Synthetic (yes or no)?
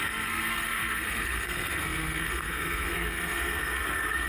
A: yes